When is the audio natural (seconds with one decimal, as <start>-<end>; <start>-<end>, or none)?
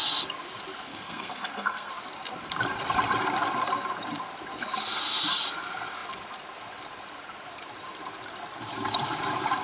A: 0.0-0.9; 1.9-9.6